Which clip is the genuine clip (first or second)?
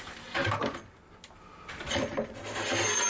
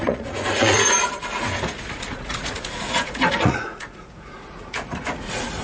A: first